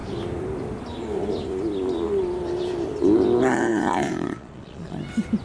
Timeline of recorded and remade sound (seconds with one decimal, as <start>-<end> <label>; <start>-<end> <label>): 0.0-3.7 recorded; 3.7-5.0 remade; 5.0-5.4 recorded